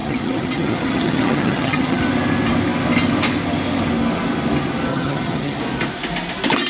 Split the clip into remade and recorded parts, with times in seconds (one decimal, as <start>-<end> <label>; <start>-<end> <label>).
0.0-2.0 remade; 2.0-4.9 recorded; 4.9-5.6 remade; 5.6-6.7 recorded

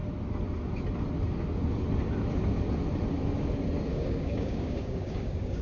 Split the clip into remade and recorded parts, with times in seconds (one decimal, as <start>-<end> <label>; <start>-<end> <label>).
0.0-3.9 recorded; 3.9-5.6 remade

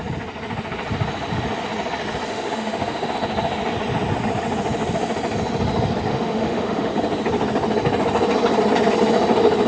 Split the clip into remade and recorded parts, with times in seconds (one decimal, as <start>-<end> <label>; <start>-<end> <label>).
0.0-2.3 recorded; 2.3-3.1 remade; 3.1-6.1 recorded; 6.1-6.9 remade; 6.9-9.7 recorded